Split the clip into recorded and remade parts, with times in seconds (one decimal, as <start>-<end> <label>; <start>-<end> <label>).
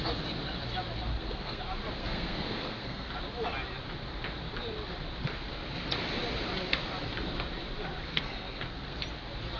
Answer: 0.0-1.1 recorded; 1.1-1.6 remade; 1.6-2.0 recorded; 2.0-3.1 remade; 3.1-8.1 recorded; 8.1-9.0 remade; 9.0-9.6 recorded